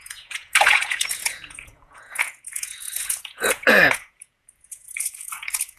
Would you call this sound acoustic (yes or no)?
no